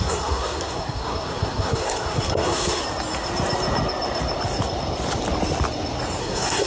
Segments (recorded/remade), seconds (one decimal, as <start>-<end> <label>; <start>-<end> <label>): 0.0-2.8 remade; 2.8-6.2 recorded; 6.2-6.7 remade

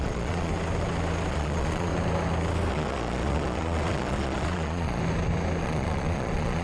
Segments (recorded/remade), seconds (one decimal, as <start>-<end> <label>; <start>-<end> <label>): 0.0-0.5 remade; 0.5-1.3 recorded; 1.3-1.9 remade; 1.9-2.7 recorded; 2.7-5.0 remade; 5.0-5.6 recorded; 5.6-6.6 remade

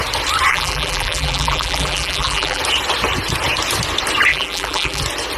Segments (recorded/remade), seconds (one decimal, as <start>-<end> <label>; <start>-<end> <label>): 0.0-0.5 recorded; 0.5-2.6 remade; 2.6-4.3 recorded; 4.3-5.0 remade; 5.0-5.4 recorded

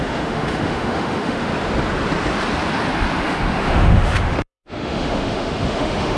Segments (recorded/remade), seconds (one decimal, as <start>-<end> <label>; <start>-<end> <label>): 0.0-1.5 remade; 1.5-3.2 recorded; 3.2-6.2 remade

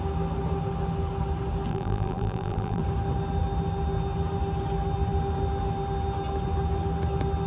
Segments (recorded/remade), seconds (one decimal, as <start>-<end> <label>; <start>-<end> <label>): 0.0-1.7 recorded; 1.7-2.8 remade; 2.8-7.5 recorded

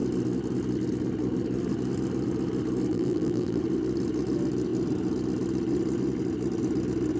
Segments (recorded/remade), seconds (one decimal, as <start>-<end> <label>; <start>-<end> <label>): 0.0-2.9 recorded; 2.9-3.6 remade; 3.6-7.2 recorded

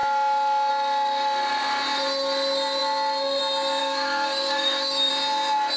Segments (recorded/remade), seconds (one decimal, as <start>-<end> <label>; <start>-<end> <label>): 0.0-3.8 recorded; 3.8-5.1 remade; 5.1-5.8 recorded

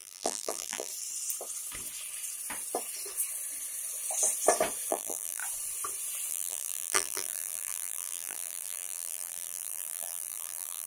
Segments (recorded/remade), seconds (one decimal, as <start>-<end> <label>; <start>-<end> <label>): 0.0-0.9 remade; 0.9-4.9 recorded; 4.9-5.4 remade; 5.4-6.3 recorded; 6.3-10.9 remade